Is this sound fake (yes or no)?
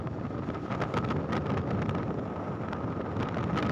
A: no